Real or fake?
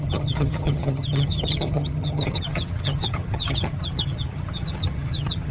fake